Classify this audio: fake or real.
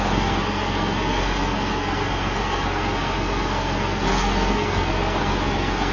fake